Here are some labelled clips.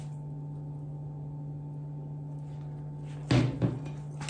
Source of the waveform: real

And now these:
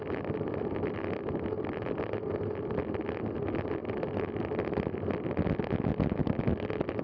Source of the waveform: real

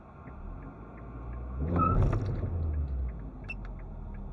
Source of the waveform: real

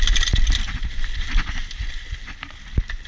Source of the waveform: fake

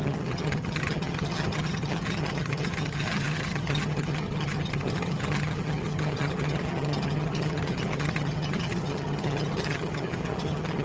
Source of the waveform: fake